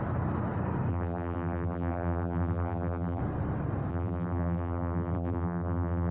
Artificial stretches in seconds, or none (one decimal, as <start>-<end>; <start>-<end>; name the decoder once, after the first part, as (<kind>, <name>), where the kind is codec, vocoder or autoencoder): 0.9-3.2 (vocoder, BigVGAN v2); 3.9-6.1